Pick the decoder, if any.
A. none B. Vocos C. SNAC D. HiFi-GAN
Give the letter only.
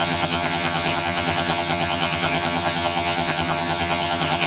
D